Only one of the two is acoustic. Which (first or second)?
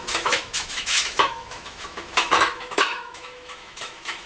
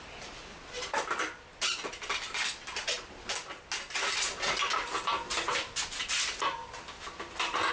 second